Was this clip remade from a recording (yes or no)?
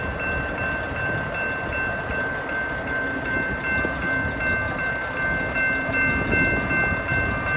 no